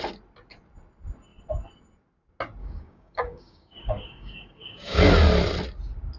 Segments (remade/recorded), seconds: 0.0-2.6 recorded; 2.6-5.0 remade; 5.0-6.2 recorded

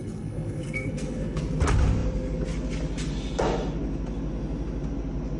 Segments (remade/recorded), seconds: 0.0-1.4 remade; 1.4-5.4 recorded

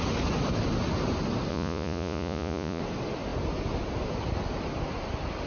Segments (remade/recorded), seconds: 0.0-1.5 recorded; 1.5-2.8 remade; 2.8-5.5 recorded

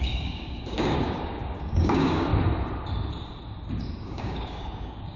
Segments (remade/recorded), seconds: 0.0-2.3 remade; 2.3-4.0 recorded; 4.0-5.2 remade

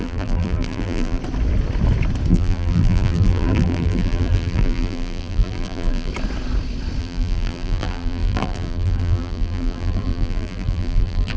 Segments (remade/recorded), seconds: 0.0-1.2 remade; 1.2-2.3 recorded; 2.3-6.1 remade; 6.1-7.0 recorded; 7.0-11.4 remade

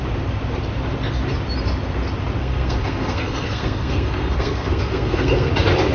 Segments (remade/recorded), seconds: 0.0-2.4 recorded; 2.4-5.5 remade; 5.5-5.9 recorded

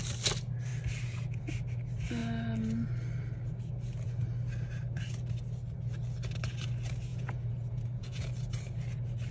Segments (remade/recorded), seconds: 0.0-7.1 recorded; 7.1-8.3 remade; 8.3-9.3 recorded

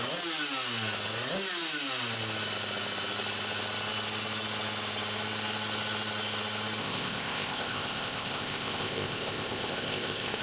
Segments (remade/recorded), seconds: 0.0-6.8 recorded; 6.8-10.4 remade